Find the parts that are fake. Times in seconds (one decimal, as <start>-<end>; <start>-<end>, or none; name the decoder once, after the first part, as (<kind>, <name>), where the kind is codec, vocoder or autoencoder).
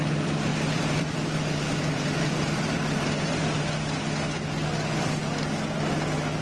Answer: 0.5-3.6 (vocoder, BigVGAN v2)